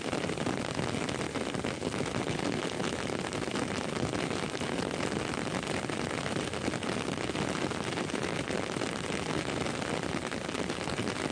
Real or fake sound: real